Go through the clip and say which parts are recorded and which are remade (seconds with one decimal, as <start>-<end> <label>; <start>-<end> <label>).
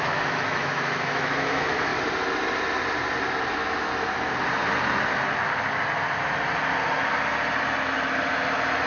0.0-1.9 remade; 1.9-3.5 recorded; 3.5-3.9 remade; 3.9-8.9 recorded